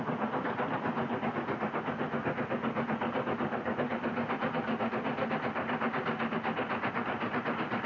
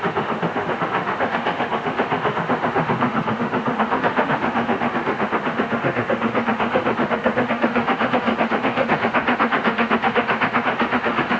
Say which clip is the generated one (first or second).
second